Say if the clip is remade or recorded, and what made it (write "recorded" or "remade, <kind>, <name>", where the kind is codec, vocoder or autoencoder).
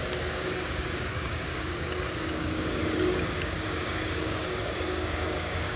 remade, codec, DAC